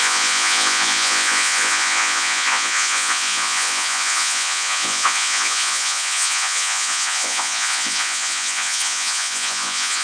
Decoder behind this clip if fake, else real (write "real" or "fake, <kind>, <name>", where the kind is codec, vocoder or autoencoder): fake, vocoder, Vocos